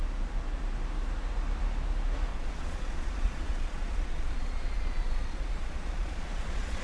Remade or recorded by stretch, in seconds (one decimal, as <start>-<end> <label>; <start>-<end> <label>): 0.0-2.3 recorded; 2.3-6.8 remade